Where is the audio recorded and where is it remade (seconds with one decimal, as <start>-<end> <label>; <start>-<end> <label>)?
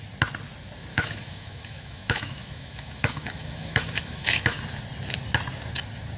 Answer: 0.0-0.9 recorded; 0.9-4.6 remade; 4.6-6.2 recorded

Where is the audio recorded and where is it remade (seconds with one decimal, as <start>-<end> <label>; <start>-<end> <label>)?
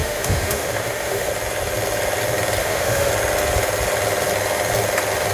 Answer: 0.0-1.3 remade; 1.3-2.6 recorded; 2.6-3.1 remade; 3.1-5.3 recorded